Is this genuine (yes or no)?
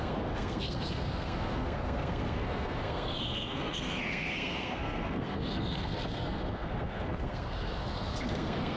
no